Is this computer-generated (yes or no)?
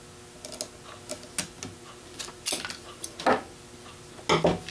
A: no